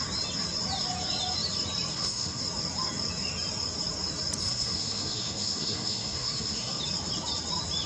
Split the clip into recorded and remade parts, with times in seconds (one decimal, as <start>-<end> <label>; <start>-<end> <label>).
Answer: 0.0-1.9 recorded; 1.9-2.4 remade; 2.4-4.4 recorded; 4.4-6.8 remade; 6.8-7.9 recorded